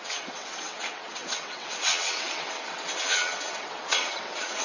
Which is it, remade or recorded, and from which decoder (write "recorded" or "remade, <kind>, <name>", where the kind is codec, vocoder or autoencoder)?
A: remade, vocoder, WaveNeXt